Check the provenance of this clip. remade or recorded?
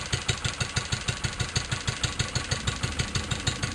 recorded